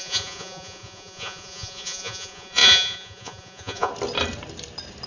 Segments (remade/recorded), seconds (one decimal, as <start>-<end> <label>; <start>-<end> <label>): 0.0-3.9 remade; 3.9-5.1 recorded